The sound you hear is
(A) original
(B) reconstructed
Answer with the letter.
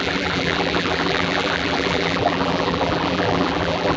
B